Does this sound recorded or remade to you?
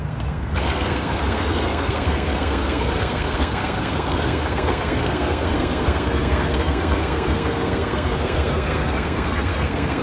remade